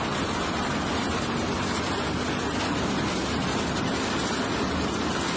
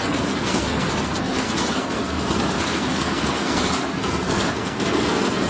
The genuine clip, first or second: first